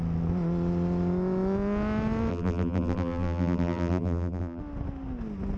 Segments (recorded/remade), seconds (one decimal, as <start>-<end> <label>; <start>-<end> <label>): 0.0-2.3 recorded; 2.3-4.6 remade; 4.6-5.6 recorded